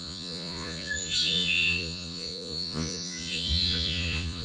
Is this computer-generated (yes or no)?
yes